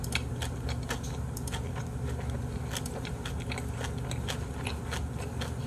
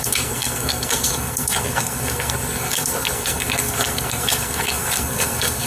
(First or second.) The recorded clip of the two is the first